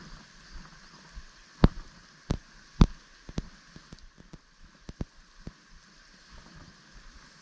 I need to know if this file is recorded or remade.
recorded